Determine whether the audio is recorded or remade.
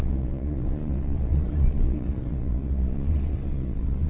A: remade